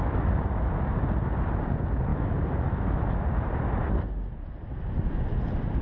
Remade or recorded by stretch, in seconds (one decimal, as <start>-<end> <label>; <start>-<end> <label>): 0.0-5.8 recorded